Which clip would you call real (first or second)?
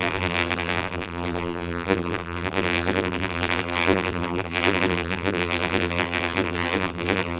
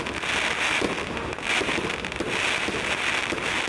second